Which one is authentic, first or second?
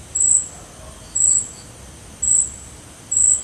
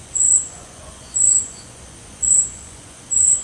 first